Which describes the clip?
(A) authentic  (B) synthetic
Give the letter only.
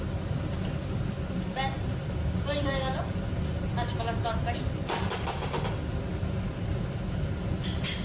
A